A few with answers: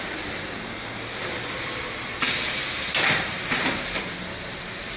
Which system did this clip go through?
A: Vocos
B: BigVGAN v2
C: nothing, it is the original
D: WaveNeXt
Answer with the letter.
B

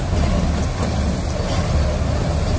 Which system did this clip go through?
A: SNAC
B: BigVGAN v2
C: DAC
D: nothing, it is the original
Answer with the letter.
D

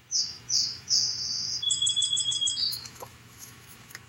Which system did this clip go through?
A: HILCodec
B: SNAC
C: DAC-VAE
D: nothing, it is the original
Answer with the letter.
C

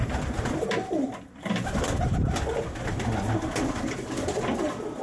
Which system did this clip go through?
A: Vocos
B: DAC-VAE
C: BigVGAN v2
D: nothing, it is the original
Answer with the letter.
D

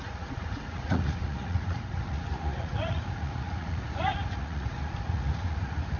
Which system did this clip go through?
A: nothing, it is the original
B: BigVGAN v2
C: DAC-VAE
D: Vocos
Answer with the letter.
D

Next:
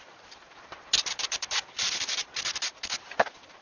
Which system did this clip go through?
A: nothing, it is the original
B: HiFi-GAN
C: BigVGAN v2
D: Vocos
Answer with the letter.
C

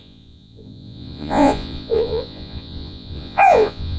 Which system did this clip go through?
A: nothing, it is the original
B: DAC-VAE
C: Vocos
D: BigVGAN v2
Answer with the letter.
C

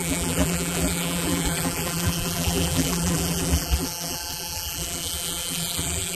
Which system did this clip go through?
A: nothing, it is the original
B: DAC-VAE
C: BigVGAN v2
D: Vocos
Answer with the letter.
C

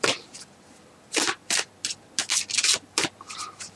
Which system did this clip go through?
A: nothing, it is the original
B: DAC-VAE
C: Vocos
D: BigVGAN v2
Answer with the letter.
A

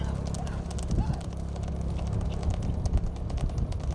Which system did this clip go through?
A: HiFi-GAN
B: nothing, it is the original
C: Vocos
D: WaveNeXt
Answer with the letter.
B